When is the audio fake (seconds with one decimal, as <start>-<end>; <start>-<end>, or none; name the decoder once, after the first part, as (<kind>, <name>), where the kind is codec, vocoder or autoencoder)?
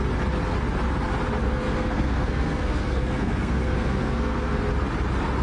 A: 1.4-4.6 (codec, SNAC)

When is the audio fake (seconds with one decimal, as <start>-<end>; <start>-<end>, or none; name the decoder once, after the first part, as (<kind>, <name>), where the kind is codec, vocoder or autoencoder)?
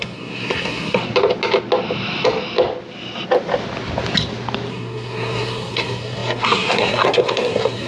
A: 0.0-1.0 (codec, SNAC); 4.7-7.9